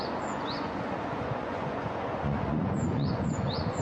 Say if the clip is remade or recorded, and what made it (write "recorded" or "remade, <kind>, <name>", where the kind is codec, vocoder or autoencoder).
remade, vocoder, Vocos